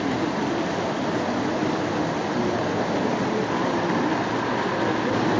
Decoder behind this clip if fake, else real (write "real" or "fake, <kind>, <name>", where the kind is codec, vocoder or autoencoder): real